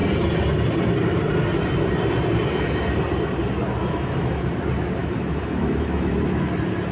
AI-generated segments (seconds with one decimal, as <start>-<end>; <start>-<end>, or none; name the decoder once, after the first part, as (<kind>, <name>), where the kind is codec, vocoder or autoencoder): 3.8-4.5 (autoencoder, DAC-VAE); 5.0-6.1